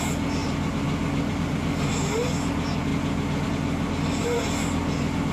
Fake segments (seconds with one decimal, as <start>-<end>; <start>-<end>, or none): none